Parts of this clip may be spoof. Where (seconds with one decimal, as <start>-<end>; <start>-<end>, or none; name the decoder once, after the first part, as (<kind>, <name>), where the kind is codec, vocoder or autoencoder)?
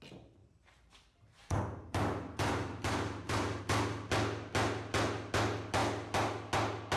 0.4-3.6 (vocoder, BigVGAN v2)